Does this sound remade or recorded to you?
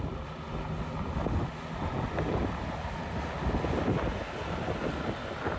recorded